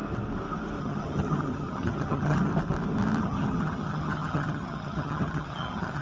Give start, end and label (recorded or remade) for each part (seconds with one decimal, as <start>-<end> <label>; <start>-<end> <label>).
0.0-0.8 recorded; 0.8-2.5 remade; 2.5-3.2 recorded; 3.2-6.0 remade